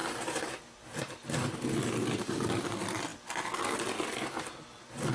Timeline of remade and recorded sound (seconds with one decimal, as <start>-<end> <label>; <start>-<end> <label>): 0.0-0.6 remade; 0.6-5.1 recorded